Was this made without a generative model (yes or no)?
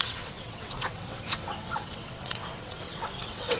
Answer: no